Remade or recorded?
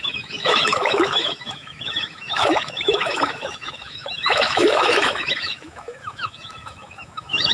remade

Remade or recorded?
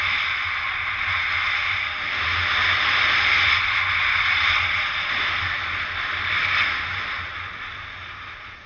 recorded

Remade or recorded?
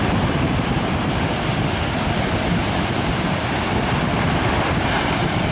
recorded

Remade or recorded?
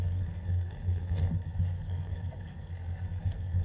remade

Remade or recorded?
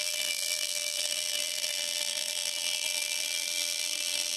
remade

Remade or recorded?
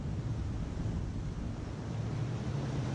recorded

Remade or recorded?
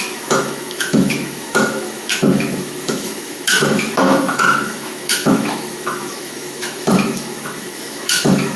remade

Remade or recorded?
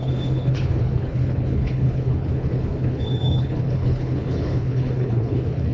remade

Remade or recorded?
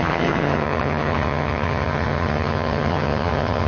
remade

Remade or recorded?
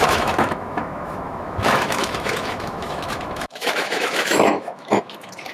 remade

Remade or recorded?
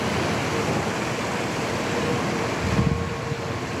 recorded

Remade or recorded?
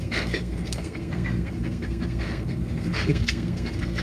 remade